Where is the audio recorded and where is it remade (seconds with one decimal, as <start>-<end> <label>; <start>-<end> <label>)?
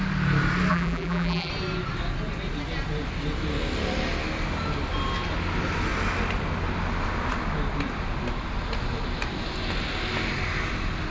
0.0-0.7 recorded; 0.7-1.5 remade; 1.5-11.1 recorded